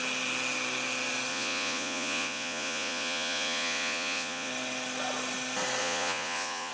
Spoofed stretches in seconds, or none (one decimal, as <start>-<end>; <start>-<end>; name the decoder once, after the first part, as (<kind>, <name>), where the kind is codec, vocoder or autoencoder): 1.3-4.5 (vocoder, Vocos); 5.8-6.7

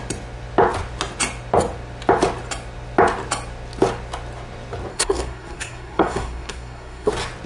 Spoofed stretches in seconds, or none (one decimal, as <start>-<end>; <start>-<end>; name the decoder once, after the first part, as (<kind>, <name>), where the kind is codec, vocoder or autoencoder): 4.9-7.1 (codec, SNAC)

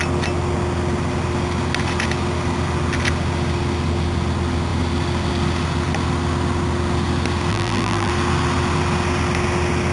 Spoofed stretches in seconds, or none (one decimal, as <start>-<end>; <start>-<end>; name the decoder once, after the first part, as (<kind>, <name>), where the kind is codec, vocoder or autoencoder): 7.5-8.1 (vocoder, BigVGAN v2)

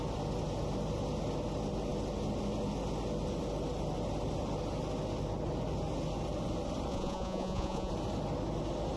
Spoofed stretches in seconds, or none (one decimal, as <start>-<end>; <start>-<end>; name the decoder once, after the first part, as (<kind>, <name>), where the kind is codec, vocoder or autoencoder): 6.9-7.9 (vocoder, Vocos)